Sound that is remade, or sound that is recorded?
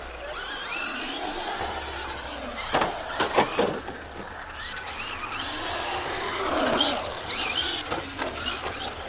recorded